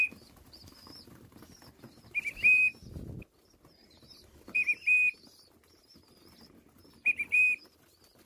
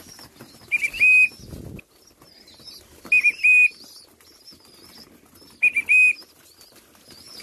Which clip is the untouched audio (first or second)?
second